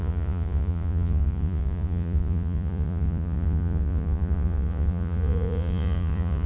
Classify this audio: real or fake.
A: fake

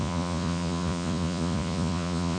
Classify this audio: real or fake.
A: fake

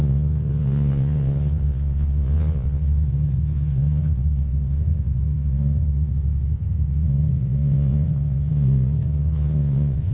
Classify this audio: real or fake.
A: fake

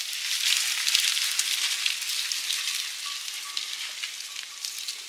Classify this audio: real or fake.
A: real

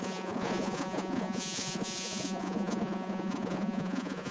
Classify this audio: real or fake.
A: fake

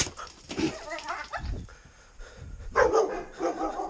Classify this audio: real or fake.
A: real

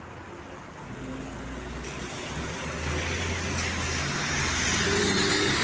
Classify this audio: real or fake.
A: real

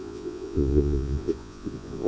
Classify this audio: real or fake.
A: fake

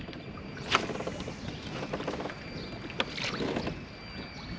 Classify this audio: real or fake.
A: real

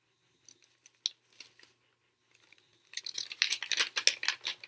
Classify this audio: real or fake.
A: real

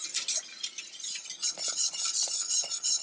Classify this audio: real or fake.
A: real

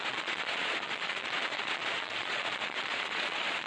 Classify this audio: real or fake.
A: fake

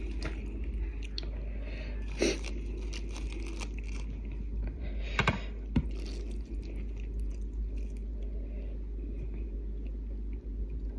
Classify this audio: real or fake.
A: real